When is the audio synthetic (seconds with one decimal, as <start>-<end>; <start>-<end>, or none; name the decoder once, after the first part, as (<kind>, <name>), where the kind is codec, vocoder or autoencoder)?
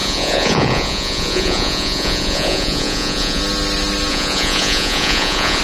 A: 0.0-3.4 (vocoder, Vocos); 4.1-5.6